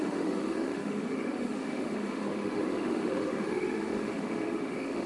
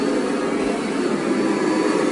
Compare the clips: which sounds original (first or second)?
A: second